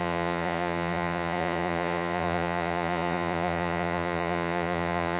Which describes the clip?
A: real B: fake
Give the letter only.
B